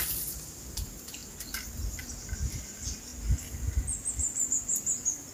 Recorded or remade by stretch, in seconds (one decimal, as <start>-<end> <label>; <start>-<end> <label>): 0.0-3.1 remade; 3.1-4.1 recorded; 4.1-5.3 remade